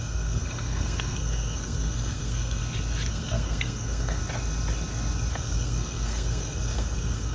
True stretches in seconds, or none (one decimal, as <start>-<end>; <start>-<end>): 2.6-3.1; 4.2-5.3